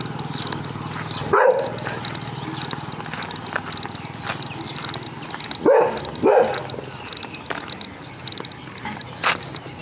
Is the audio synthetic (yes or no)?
no